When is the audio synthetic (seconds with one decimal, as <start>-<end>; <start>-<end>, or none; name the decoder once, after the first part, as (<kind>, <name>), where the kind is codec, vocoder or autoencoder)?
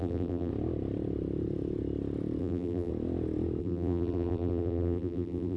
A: 0.0-0.5 (vocoder, BigVGAN v2); 2.4-2.9; 3.6-5.6